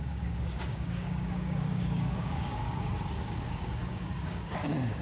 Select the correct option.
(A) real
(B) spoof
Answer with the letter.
B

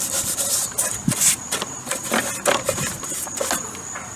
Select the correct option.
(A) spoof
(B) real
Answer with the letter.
B